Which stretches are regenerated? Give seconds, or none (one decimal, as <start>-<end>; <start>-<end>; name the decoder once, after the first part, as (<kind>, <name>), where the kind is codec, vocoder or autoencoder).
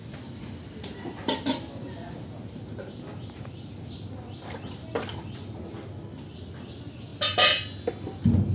none